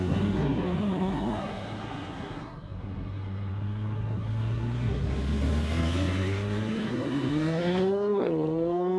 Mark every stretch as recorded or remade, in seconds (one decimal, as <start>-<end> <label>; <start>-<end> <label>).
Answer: 0.0-9.0 remade